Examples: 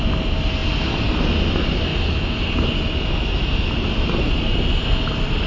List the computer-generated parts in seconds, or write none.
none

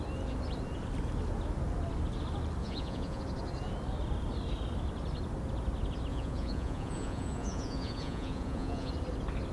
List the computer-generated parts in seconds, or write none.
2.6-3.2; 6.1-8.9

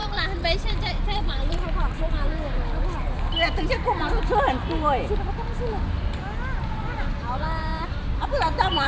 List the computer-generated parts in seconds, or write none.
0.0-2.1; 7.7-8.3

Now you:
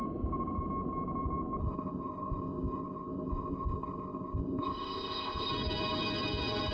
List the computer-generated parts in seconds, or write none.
1.6-5.5

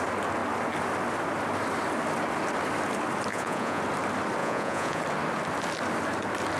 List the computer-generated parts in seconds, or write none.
3.3-3.8; 4.4-5.0

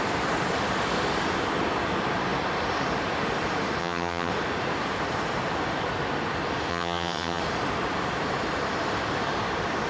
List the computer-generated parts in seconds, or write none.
3.8-4.3; 6.7-7.4